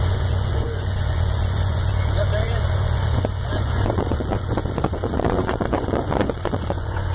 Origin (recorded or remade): remade